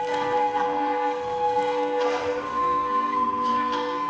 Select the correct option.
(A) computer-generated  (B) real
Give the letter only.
A